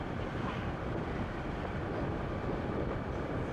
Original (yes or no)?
yes